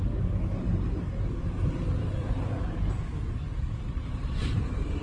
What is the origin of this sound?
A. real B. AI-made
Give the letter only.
A